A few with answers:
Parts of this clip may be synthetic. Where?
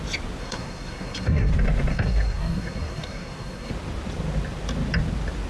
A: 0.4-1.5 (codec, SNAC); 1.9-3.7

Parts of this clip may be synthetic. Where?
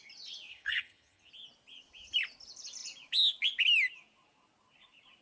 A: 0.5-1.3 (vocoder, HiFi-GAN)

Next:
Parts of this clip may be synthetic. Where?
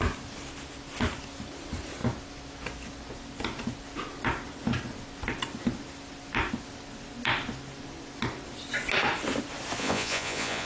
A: 9.8-10.7 (vocoder, Vocos)